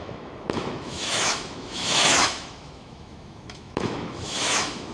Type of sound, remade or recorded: remade